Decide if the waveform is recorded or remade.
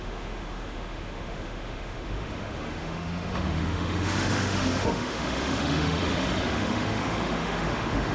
remade